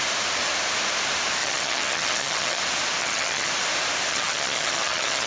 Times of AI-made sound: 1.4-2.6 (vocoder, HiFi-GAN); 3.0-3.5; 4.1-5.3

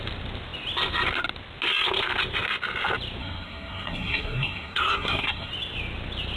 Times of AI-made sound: 3.2-5.5 (codec, SNAC)

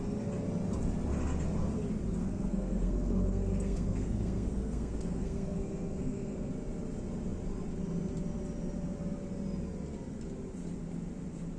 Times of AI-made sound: 2.2-6.5 (codec, SNAC)

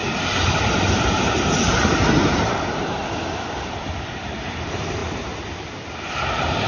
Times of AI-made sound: 1.1-3.0 (vocoder, BigVGAN v2); 4.1-5.0; 5.9-6.7

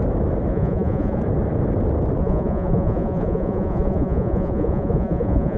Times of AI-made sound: 0.5-1.2 (vocoder, Vocos); 2.2-5.6